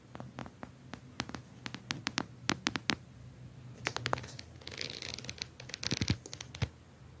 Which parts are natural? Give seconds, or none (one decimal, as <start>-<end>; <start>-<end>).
0.0-7.2